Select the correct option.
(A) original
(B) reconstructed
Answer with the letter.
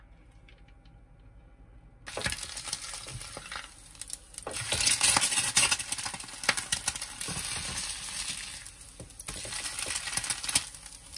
A